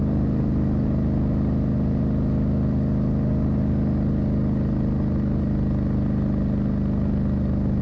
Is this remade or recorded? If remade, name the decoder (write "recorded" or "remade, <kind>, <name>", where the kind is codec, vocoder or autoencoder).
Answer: recorded